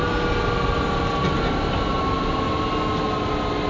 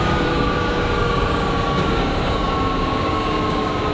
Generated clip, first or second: second